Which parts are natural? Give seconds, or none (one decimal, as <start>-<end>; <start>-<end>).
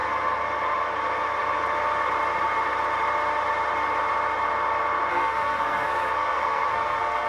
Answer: 0.0-5.1